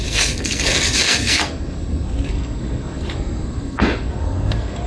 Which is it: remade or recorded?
remade